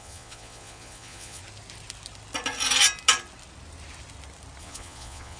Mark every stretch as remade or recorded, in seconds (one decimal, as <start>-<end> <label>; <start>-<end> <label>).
0.0-1.4 remade; 1.4-4.6 recorded; 4.6-5.4 remade